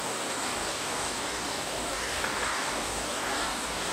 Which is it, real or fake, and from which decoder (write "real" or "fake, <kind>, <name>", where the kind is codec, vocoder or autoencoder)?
fake, codec, DAC